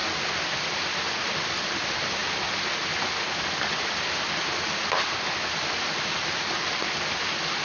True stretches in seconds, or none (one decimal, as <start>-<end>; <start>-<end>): 0.0-7.6